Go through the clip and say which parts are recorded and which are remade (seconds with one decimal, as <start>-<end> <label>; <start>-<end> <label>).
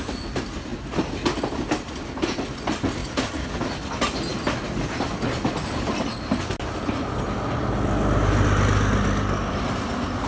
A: 0.0-10.3 recorded